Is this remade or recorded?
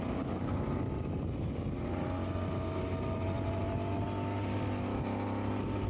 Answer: recorded